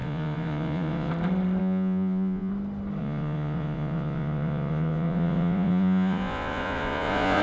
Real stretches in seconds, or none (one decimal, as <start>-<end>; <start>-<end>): 1.1-1.6; 2.5-3.0